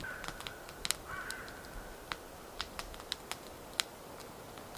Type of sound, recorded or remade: recorded